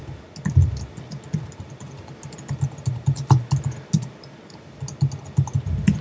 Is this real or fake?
real